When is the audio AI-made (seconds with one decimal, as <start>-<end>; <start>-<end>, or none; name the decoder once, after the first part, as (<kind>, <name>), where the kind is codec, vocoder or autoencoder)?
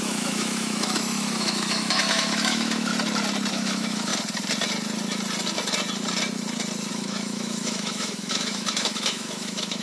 0.0-2.9 (autoencoder, DAC-VAE); 3.5-4.1; 6.9-9.8